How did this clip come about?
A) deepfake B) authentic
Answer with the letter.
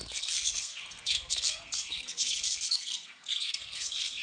A